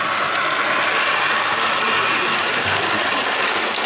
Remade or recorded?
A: recorded